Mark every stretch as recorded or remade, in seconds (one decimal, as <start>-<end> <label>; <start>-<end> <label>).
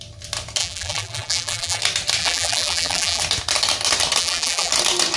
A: 0.0-0.6 recorded; 0.6-1.8 remade; 1.8-2.2 recorded; 2.2-3.2 remade; 3.2-4.2 recorded; 4.2-4.7 remade; 4.7-5.2 recorded